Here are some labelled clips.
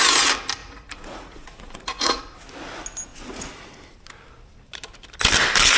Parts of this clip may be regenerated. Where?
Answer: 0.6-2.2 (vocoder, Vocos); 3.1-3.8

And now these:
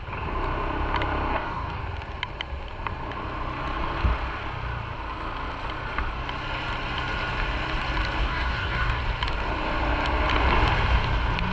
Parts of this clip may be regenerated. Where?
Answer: 1.3-1.8 (codec, DAC); 8.2-9.0